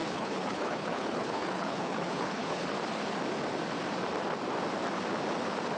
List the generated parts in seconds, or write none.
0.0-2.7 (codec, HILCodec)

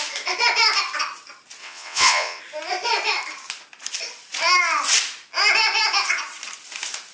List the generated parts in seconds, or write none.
1.6-2.4 (vocoder, WaveNeXt)

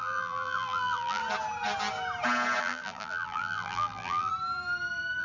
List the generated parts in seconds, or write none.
0.0-1.2 (vocoder, BigVGAN v2); 2.6-4.3